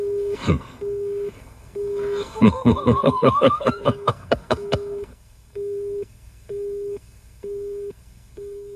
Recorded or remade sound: remade